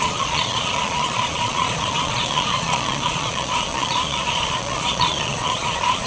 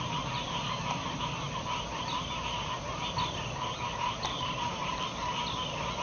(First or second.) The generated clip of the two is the first